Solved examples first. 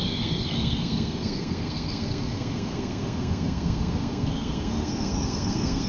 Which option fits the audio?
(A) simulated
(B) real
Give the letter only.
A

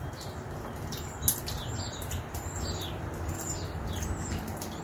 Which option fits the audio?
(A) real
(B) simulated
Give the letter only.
A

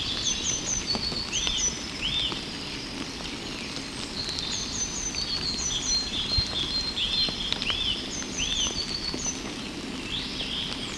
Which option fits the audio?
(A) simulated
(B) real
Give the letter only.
B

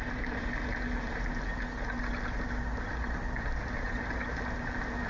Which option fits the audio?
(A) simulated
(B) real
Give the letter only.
B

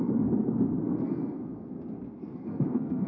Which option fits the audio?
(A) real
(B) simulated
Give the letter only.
B